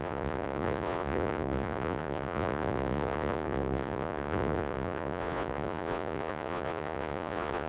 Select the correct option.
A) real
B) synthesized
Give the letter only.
B